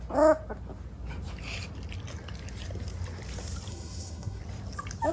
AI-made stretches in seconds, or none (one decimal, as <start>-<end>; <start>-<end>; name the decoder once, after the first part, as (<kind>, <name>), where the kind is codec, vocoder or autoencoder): 3.7-4.4 (codec, SNAC)